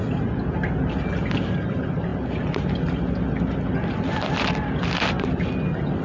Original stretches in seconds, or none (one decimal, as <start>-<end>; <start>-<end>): 0.0-6.0